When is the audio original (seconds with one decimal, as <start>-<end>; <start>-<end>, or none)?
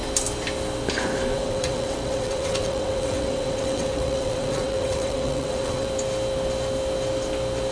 0.0-1.3; 5.9-7.7